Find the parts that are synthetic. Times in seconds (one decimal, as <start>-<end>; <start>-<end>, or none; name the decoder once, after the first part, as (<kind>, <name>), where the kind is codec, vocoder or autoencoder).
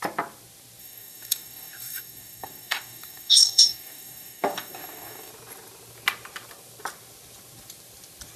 0.8-5.3 (codec, DAC)